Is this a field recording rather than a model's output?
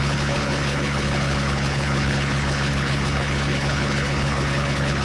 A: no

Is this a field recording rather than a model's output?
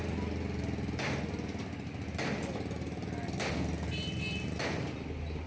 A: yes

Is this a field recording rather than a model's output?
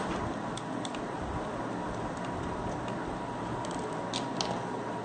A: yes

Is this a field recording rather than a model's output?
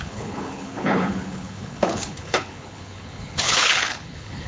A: no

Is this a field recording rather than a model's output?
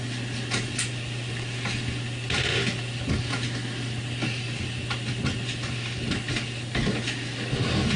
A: yes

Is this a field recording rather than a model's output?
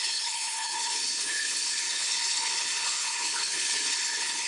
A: no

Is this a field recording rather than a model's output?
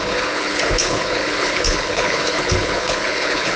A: no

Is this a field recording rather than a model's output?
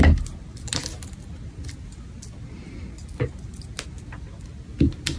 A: yes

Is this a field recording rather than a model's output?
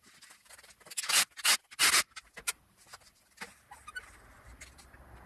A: yes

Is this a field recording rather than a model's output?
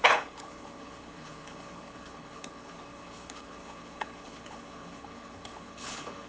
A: no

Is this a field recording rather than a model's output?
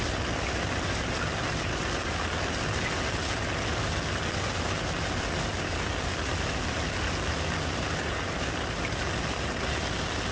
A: yes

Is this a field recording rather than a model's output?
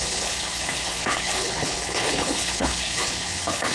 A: no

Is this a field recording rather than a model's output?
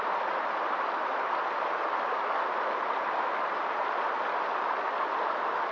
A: yes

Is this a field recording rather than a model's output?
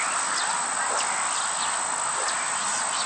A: yes